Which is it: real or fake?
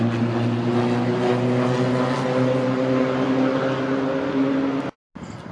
real